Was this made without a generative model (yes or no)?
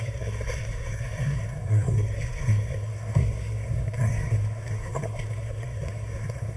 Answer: no